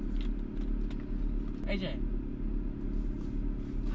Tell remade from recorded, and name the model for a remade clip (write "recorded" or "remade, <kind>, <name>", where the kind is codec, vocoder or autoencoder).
recorded